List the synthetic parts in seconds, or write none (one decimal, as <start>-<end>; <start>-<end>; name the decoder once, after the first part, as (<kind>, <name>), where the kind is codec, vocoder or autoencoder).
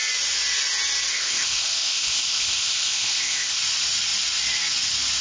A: 1.1-3.6 (codec, ZipCodec)